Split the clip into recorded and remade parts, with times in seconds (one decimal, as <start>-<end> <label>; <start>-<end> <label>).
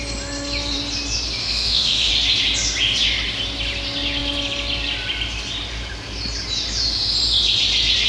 0.0-1.4 recorded; 1.4-2.1 remade; 2.1-8.1 recorded